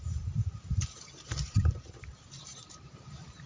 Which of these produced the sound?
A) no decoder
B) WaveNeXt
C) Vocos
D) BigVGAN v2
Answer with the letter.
D